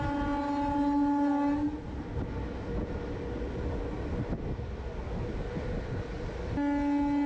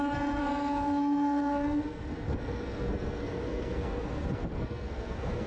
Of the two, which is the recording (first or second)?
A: first